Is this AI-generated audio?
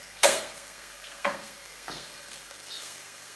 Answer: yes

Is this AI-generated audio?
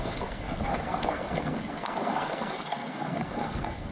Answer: yes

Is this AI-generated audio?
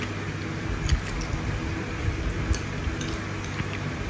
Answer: no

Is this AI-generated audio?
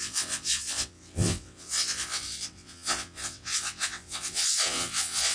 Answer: yes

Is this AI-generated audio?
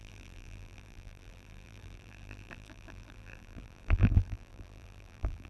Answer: yes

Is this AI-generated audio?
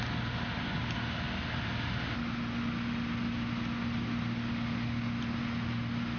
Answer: no